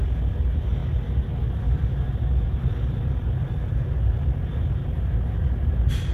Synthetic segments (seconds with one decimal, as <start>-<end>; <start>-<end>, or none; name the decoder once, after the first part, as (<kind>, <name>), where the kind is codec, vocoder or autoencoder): none